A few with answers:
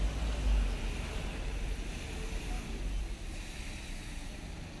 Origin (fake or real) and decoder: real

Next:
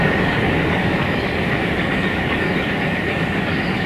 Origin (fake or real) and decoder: fake, codec, DAC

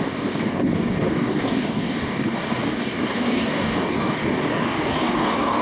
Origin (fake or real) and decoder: fake, codec, DAC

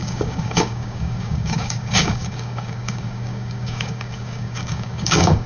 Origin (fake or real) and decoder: fake, codec, DAC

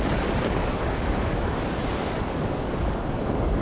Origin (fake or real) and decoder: fake, codec, DAC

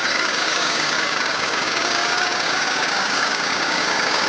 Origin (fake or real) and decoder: fake, codec, DAC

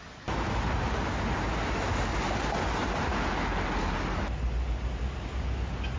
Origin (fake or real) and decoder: real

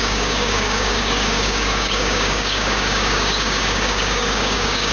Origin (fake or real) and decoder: fake, codec, DAC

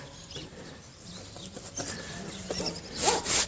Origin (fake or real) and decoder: real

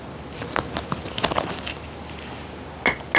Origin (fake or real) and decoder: real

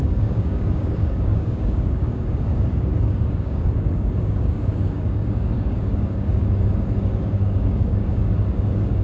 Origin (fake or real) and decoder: fake, codec, DAC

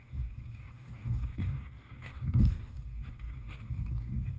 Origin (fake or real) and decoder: fake, codec, DAC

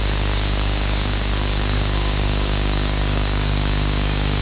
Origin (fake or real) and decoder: fake, codec, DAC